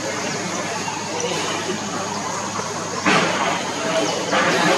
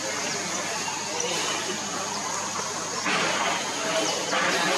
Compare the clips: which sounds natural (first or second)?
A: second